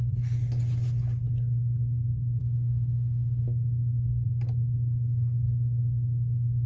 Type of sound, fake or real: real